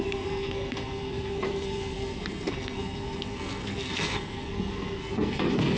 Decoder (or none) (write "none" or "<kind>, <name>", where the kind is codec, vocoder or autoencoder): codec, SNAC